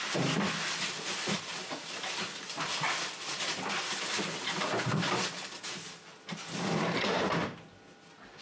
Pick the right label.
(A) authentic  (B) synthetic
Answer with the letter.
A